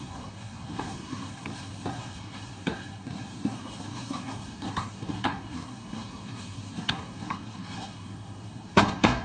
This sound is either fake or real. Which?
fake